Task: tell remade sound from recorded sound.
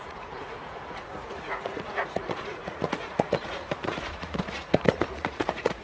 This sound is remade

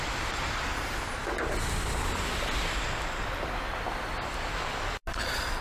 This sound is recorded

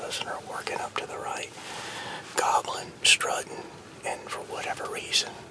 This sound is recorded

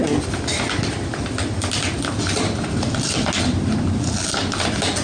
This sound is recorded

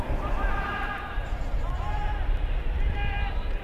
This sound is recorded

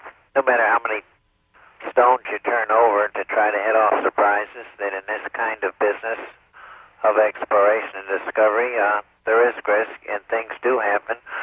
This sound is recorded